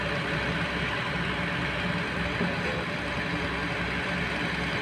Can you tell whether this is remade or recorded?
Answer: recorded